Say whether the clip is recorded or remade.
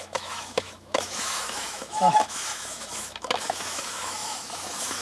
remade